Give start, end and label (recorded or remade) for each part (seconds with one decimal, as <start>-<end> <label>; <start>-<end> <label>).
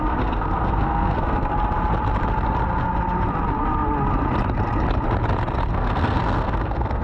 0.0-1.5 remade; 1.5-5.7 recorded; 5.7-7.0 remade